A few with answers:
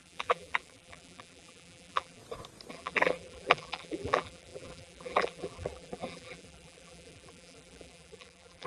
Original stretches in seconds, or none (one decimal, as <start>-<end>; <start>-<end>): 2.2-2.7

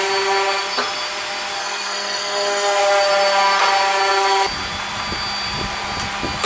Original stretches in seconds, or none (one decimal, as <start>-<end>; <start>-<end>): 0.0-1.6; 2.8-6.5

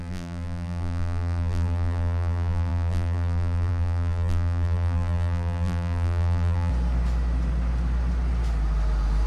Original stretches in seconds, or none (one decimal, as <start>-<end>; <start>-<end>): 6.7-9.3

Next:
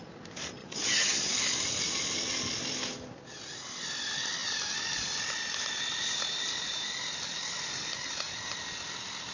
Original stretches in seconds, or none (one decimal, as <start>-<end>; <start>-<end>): 0.0-0.6; 1.3-9.3